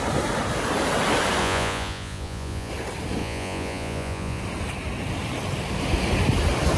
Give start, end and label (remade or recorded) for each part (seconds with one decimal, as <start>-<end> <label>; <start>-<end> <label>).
0.0-1.4 recorded; 1.4-2.7 remade; 2.7-3.2 recorded; 3.2-4.4 remade; 4.4-6.8 recorded